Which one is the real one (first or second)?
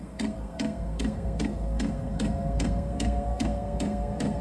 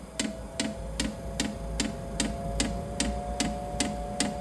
second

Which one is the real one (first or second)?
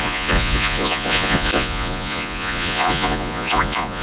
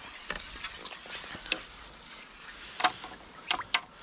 second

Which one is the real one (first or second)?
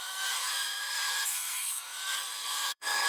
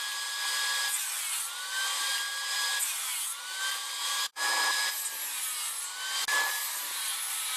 second